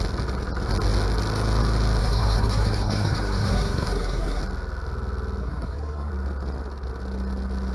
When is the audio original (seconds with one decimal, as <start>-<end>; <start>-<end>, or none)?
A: 0.0-2.0; 4.4-5.4; 6.1-7.7